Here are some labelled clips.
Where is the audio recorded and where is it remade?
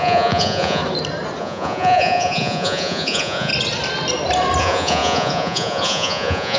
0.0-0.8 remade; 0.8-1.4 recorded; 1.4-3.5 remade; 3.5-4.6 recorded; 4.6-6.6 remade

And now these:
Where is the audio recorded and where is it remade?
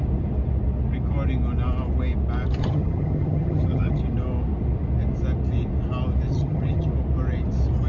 0.0-2.6 recorded; 2.6-4.0 remade; 4.0-6.3 recorded; 6.3-6.9 remade; 6.9-7.9 recorded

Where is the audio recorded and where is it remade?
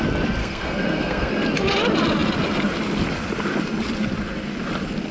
0.0-0.4 recorded; 0.4-1.3 remade; 1.3-5.1 recorded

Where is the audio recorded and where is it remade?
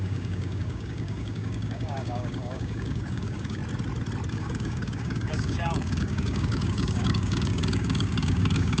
0.0-3.6 remade; 3.6-4.3 recorded; 4.3-8.8 remade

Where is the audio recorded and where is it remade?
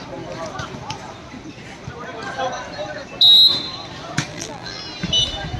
0.0-4.3 recorded; 4.3-4.8 remade; 4.8-5.6 recorded